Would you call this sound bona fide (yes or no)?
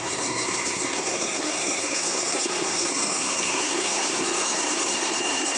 no